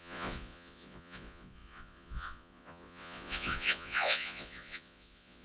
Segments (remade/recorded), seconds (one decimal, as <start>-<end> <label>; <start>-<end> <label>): 0.0-5.4 remade